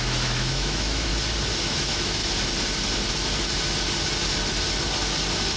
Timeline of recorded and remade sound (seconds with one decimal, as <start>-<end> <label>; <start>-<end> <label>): 0.0-1.1 remade; 1.1-1.6 recorded; 1.6-2.2 remade; 2.2-5.6 recorded